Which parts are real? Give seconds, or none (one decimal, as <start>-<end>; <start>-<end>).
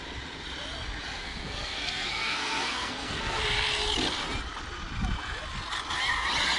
0.0-1.2; 3.4-6.6